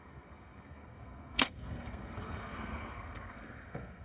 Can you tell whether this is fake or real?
fake